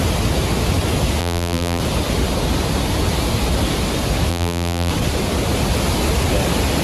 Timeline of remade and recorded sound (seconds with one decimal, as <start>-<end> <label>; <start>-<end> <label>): 0.0-1.2 recorded; 1.2-1.8 remade; 1.8-4.3 recorded; 4.3-4.9 remade; 4.9-6.8 recorded